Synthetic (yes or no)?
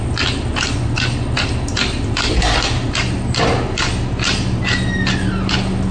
no